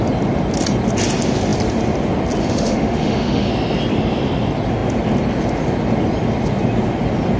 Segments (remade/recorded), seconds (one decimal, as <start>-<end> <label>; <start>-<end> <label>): 0.0-2.4 recorded; 2.4-3.5 remade; 3.5-7.4 recorded